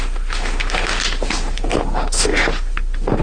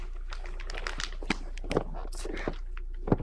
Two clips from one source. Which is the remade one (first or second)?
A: first